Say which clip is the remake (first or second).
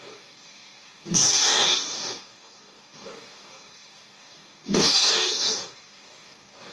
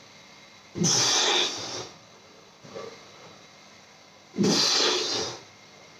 first